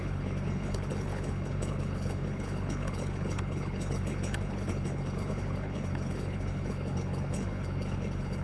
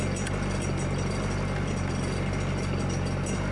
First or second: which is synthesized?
first